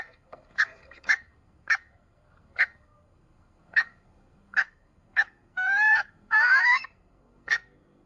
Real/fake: fake